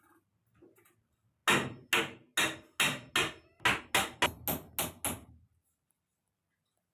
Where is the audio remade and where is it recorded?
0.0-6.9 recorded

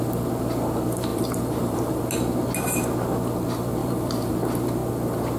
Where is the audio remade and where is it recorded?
0.0-1.1 recorded; 1.1-2.0 remade; 2.0-3.8 recorded; 3.8-4.3 remade; 4.3-5.4 recorded

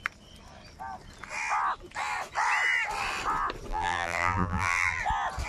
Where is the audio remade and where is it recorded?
0.0-3.7 recorded; 3.7-5.0 remade; 5.0-5.5 recorded

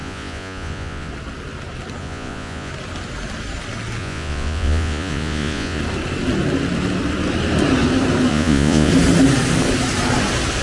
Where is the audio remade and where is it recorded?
0.0-1.1 remade; 1.1-2.0 recorded; 2.0-2.7 remade; 2.7-4.0 recorded; 4.0-5.8 remade; 5.8-8.3 recorded; 8.3-8.9 remade; 8.9-10.6 recorded

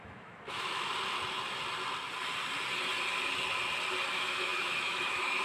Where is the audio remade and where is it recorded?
0.0-0.9 remade; 0.9-4.1 recorded; 4.1-5.4 remade